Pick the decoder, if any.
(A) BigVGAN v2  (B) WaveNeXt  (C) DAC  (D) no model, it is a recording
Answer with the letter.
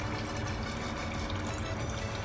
D